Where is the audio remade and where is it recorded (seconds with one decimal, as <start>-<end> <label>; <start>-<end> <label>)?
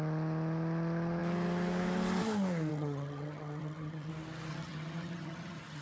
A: 0.0-2.7 recorded; 2.7-4.1 remade; 4.1-4.5 recorded; 4.5-5.8 remade